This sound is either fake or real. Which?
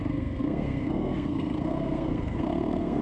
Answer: fake